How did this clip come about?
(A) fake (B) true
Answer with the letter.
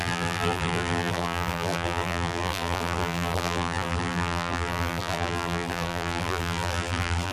A